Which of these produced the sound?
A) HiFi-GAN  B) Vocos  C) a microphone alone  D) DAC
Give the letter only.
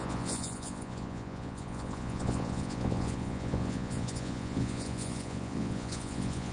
B